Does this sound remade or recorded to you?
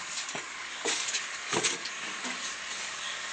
remade